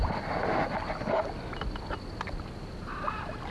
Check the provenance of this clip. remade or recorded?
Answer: recorded